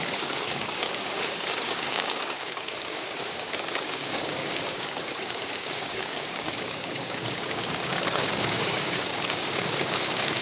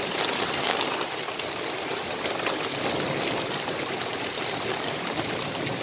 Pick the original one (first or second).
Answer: second